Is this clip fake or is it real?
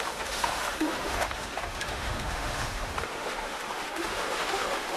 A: fake